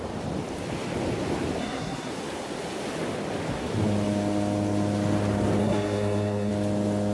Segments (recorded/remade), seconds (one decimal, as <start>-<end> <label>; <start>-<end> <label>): 0.0-1.6 recorded; 1.6-2.1 remade; 2.1-5.6 recorded; 5.6-6.5 remade; 6.5-7.1 recorded